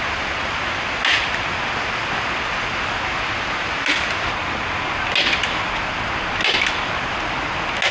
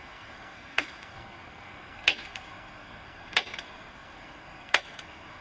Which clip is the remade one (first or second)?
second